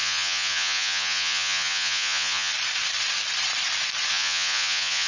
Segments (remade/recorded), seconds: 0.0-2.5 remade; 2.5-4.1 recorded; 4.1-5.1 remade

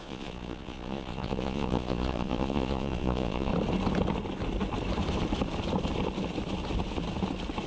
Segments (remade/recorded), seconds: 0.0-3.5 remade; 3.5-7.7 recorded

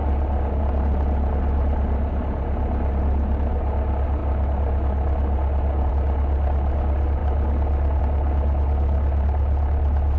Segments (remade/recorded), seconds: 0.0-10.2 recorded

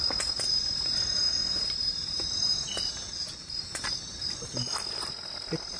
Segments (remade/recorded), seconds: 0.0-1.2 recorded; 1.2-4.7 remade; 4.7-5.8 recorded

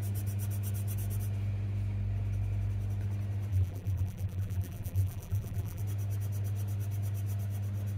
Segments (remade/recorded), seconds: 0.0-3.5 recorded; 3.5-5.8 remade; 5.8-8.0 recorded

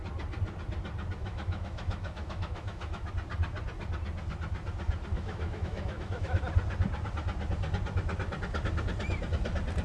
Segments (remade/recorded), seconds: 0.0-1.2 recorded; 1.2-3.1 remade; 3.1-5.1 recorded; 5.1-6.4 remade; 6.4-9.8 recorded

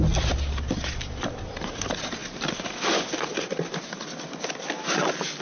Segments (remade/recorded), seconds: 0.0-5.4 recorded